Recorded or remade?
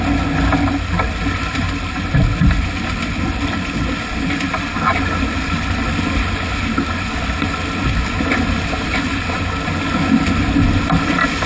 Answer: recorded